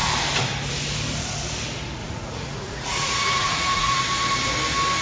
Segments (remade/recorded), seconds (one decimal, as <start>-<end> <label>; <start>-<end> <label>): 0.0-2.0 recorded; 2.0-4.0 remade; 4.0-5.0 recorded